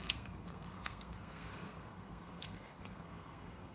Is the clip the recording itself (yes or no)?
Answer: no